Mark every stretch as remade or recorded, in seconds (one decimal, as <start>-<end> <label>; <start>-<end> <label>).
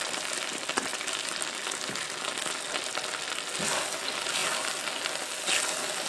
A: 0.0-6.1 recorded